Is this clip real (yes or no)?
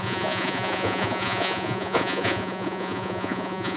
no